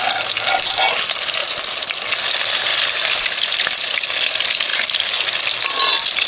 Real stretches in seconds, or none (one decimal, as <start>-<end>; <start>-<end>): 0.0-6.3